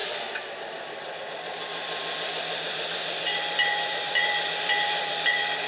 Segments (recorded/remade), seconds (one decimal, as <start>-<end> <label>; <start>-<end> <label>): 0.0-5.7 remade